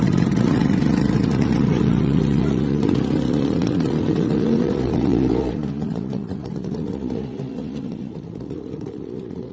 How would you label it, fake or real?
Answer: fake